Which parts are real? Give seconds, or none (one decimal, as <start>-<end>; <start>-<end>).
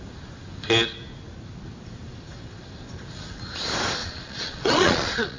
0.0-4.0